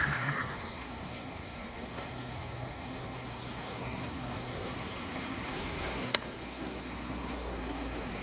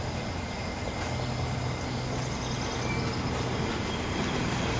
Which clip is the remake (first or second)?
first